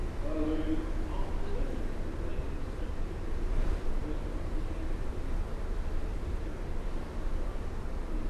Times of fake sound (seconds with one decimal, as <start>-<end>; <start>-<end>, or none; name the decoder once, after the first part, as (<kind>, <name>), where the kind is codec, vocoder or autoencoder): 1.4-8.3 (vocoder, BigVGAN v2)